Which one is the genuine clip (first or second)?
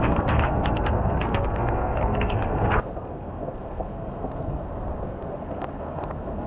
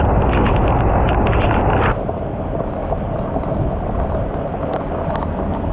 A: second